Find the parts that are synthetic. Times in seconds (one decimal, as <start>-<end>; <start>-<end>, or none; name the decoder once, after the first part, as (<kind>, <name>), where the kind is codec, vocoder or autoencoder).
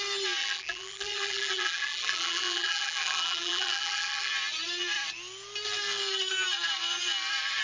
0.4-4.3 (vocoder, BigVGAN v2)